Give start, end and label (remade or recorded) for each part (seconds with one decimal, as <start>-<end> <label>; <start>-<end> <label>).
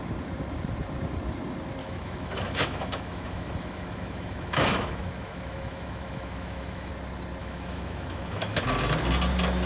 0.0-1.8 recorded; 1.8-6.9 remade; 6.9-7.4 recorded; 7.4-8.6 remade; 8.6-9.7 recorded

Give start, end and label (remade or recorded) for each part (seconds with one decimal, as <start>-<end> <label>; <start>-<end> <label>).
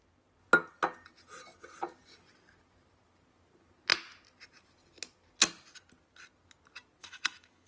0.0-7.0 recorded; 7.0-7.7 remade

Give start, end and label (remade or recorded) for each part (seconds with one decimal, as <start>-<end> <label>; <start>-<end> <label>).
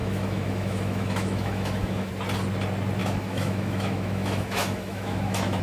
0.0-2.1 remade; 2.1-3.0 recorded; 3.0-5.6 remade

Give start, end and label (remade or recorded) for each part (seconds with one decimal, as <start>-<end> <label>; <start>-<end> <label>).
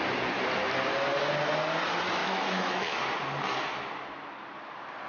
0.0-2.2 recorded; 2.2-3.0 remade; 3.0-5.1 recorded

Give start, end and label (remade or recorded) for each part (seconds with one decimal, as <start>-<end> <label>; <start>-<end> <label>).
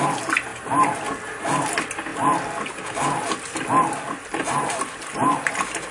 0.0-5.9 recorded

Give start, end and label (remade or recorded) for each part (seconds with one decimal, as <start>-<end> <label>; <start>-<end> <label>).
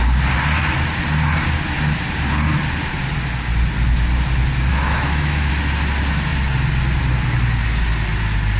0.0-4.7 recorded; 4.7-5.5 remade; 5.5-8.6 recorded